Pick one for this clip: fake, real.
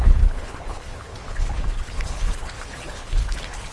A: fake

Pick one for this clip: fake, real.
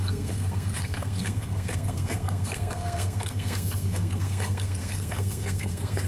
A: fake